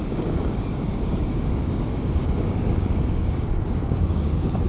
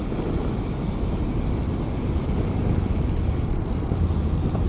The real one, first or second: second